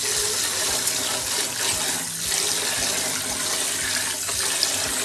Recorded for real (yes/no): yes